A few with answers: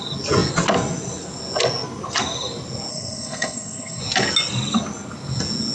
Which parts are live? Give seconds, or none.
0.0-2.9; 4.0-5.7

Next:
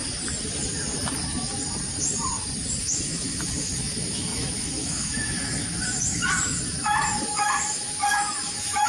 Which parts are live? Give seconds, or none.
0.0-2.8

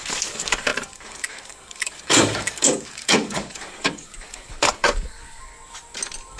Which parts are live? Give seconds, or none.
5.5-6.4

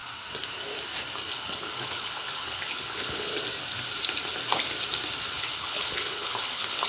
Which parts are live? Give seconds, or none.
0.0-1.3; 3.3-5.4